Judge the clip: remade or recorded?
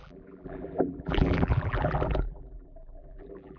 remade